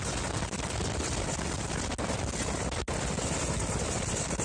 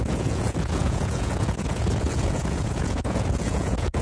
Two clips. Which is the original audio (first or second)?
first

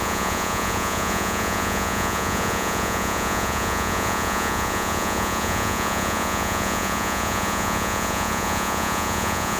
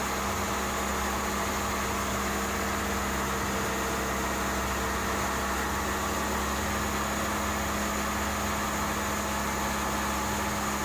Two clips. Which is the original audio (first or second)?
second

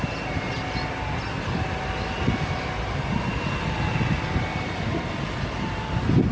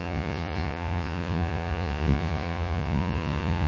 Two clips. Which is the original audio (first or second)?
first